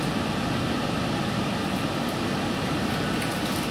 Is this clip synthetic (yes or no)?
no